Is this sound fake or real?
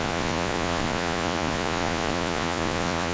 fake